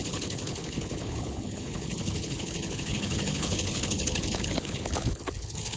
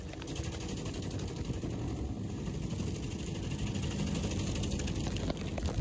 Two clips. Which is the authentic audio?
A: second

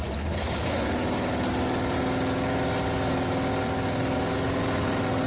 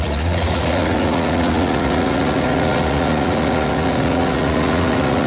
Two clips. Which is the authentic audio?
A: first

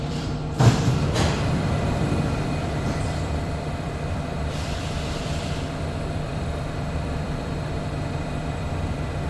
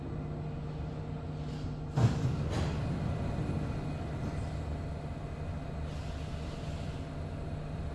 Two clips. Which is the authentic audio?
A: second